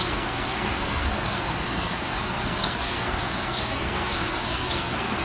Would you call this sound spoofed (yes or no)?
yes